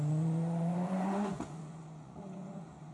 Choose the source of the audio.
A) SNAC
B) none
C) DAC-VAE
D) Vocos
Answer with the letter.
D